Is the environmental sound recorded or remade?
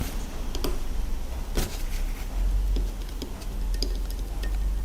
recorded